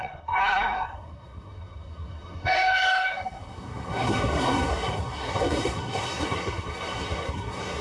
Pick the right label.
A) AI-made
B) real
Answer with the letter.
A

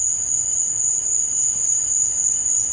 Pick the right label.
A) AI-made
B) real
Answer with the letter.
B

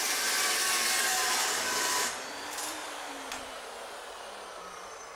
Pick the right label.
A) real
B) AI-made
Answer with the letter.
B